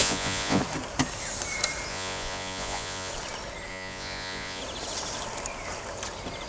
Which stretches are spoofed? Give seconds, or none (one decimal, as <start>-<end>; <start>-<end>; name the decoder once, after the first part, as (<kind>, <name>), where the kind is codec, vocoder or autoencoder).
0.0-0.6 (vocoder, Vocos); 1.9-3.1; 3.7-4.6